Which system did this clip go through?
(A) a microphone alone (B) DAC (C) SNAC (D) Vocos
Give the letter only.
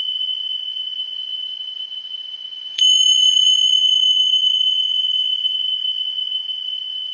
D